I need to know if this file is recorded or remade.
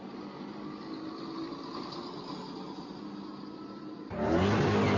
recorded